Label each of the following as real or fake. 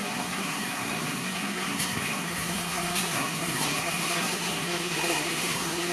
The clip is fake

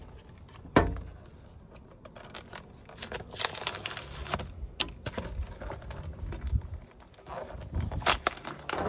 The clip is real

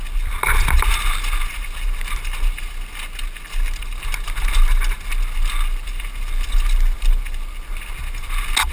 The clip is real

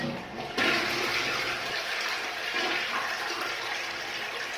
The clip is real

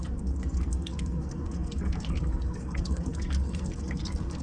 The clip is fake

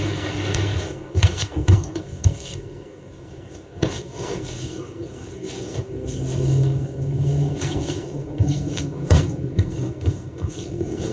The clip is fake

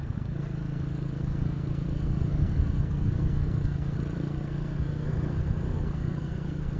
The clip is fake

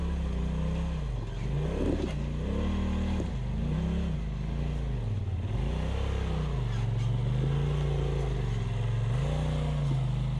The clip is real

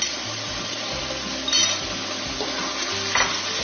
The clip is real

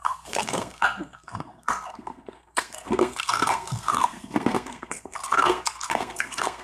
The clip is fake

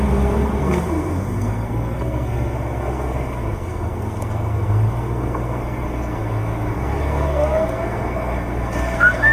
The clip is fake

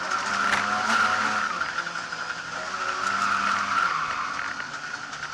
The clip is real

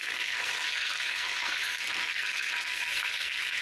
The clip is fake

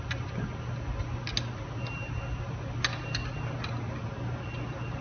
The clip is real